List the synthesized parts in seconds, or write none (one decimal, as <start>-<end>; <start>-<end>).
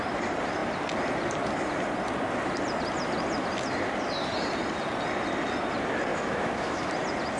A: 6.1-6.9